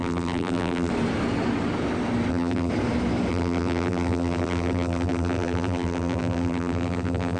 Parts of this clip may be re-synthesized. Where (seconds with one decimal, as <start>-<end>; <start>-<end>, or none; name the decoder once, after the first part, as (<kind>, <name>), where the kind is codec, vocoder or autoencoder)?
0.0-0.9 (vocoder, BigVGAN v2); 2.3-2.7; 3.3-7.4